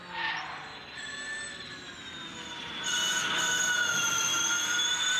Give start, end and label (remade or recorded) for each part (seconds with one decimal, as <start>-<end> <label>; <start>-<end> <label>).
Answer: 0.0-5.2 recorded